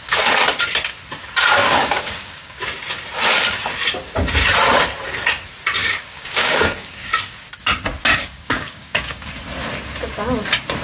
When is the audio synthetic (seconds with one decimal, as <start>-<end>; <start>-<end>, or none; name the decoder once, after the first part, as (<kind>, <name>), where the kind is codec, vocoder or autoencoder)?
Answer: 1.6-2.6 (codec, DAC); 5.8-7.1; 8.1-9.4